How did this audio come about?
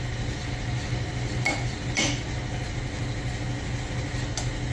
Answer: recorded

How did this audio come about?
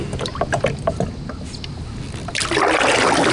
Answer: recorded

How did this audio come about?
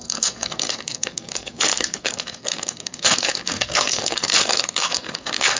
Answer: remade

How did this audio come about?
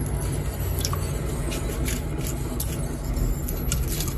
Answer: recorded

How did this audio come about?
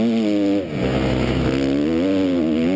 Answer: recorded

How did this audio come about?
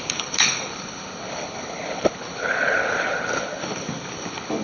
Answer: remade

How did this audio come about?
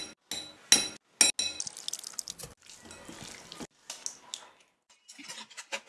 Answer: recorded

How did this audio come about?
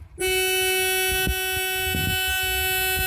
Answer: recorded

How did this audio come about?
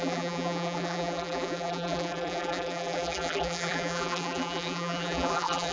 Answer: remade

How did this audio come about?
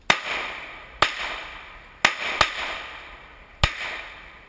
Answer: recorded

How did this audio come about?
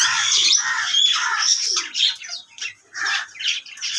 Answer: remade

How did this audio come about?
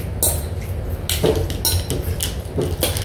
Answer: recorded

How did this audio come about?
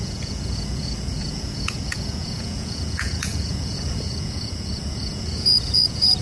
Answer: remade